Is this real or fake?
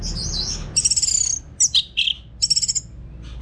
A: real